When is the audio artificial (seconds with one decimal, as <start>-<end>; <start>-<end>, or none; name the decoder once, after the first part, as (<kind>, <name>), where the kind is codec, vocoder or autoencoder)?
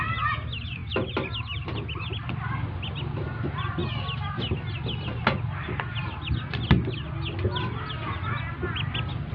0.8-1.8 (vocoder, BigVGAN v2)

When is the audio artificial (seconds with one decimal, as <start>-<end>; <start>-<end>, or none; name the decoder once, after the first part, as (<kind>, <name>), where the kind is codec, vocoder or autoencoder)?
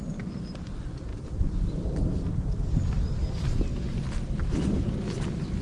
0.0-1.1 (vocoder, BigVGAN v2); 4.4-5.6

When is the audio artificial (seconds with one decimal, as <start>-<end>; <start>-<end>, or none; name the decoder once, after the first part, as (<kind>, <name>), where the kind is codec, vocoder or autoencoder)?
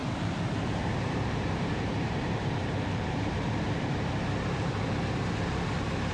0.0-3.7 (vocoder, BigVGAN v2)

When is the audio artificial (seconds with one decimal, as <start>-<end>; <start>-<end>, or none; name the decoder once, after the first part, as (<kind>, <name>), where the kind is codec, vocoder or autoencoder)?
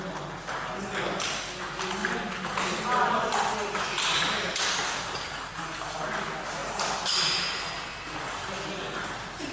6.6-8.5 (vocoder, BigVGAN v2)